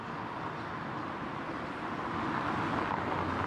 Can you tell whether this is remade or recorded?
recorded